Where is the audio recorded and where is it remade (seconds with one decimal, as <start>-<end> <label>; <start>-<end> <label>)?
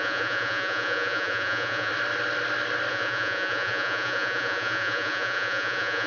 0.0-1.9 remade; 1.9-2.9 recorded; 2.9-6.1 remade